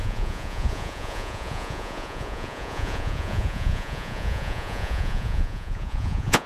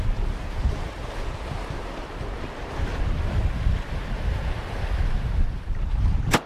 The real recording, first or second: second